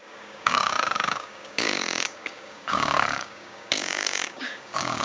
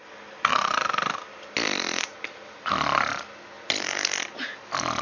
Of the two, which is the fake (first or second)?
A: first